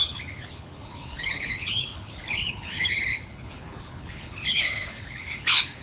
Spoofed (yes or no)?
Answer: yes